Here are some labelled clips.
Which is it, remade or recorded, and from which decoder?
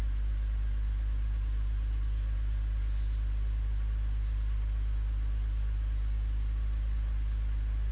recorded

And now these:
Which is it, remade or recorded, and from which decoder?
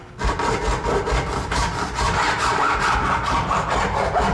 recorded